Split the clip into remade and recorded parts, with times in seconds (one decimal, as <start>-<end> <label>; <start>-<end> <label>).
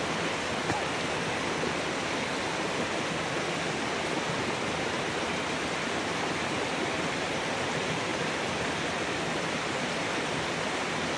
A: 0.0-8.1 recorded; 8.1-8.7 remade; 8.7-11.2 recorded